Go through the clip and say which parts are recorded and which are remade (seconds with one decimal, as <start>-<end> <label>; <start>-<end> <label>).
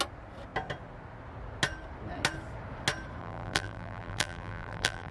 0.0-3.2 recorded; 3.2-5.1 remade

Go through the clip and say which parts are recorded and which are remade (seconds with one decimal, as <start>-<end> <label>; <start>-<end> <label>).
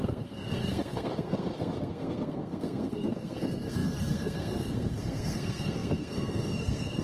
0.0-7.0 remade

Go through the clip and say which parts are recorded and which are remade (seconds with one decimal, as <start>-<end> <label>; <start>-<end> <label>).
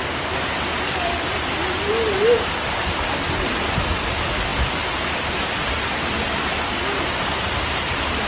0.0-8.3 recorded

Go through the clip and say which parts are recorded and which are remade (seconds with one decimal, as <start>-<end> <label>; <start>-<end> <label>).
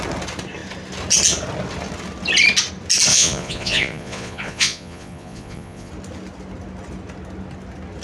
0.0-3.1 recorded; 3.1-5.9 remade; 5.9-8.0 recorded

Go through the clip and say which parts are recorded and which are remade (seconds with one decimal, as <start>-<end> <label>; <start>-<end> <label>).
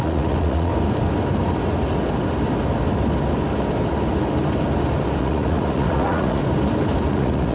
0.0-0.7 remade; 0.7-5.2 recorded; 5.2-6.4 remade; 6.4-7.1 recorded; 7.1-7.5 remade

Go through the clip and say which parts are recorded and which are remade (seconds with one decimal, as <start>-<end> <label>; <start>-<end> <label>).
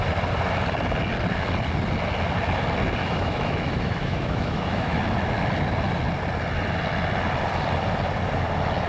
0.0-3.0 recorded; 3.0-5.0 remade; 5.0-8.9 recorded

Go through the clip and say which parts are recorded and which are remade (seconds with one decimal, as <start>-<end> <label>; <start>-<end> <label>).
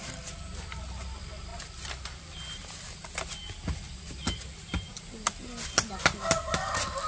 0.0-7.1 recorded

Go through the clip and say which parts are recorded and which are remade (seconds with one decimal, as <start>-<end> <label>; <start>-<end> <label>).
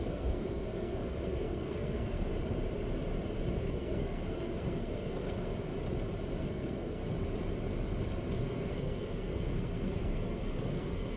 0.0-2.3 remade; 2.3-3.6 recorded; 3.6-5.7 remade; 5.7-6.4 recorded; 6.4-7.0 remade; 7.0-8.4 recorded; 8.4-11.2 remade